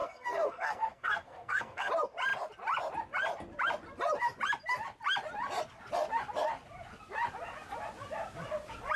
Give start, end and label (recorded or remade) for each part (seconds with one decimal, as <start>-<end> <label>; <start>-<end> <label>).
0.0-1.9 remade; 1.9-9.0 recorded